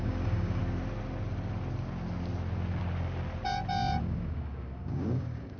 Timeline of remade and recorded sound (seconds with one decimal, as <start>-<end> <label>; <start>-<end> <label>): 0.0-0.6 remade; 0.6-4.0 recorded; 4.0-5.6 remade